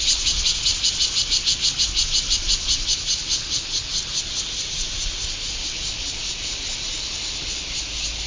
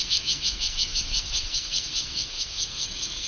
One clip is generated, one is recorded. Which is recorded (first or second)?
first